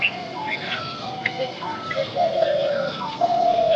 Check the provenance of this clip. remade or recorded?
remade